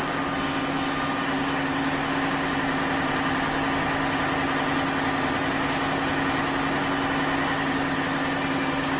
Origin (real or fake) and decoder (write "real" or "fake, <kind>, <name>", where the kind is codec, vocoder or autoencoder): real